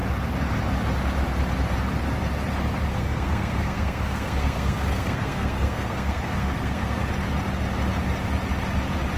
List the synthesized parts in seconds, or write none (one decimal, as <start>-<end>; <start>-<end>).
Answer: 2.9-7.1